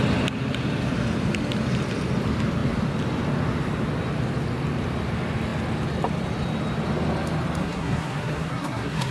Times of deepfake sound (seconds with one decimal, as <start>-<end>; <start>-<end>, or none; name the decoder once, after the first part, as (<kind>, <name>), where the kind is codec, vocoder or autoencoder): 7.6-9.1 (codec, SNAC)